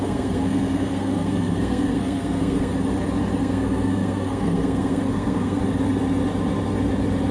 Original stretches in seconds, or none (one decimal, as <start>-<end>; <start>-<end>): 2.7-3.4; 5.6-7.3